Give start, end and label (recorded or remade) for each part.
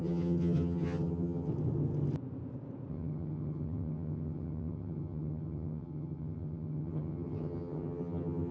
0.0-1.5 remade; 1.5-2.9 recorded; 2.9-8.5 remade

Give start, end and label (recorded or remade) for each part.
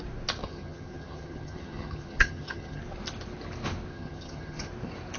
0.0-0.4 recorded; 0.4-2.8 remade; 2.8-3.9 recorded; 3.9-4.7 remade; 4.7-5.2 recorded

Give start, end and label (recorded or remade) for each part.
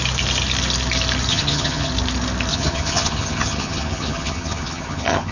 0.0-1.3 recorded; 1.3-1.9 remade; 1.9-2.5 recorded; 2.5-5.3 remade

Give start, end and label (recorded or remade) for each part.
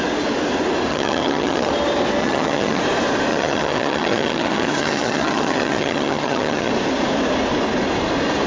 0.0-0.9 recorded; 0.9-1.7 remade; 1.7-2.2 recorded; 2.2-2.8 remade; 2.8-3.3 recorded; 3.3-6.7 remade; 6.7-8.5 recorded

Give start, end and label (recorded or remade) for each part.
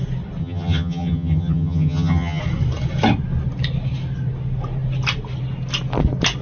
0.0-0.4 recorded; 0.4-2.4 remade; 2.4-6.4 recorded